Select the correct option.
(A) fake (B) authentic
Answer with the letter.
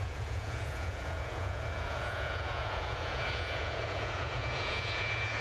A